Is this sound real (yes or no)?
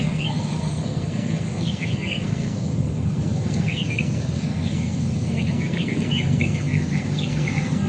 no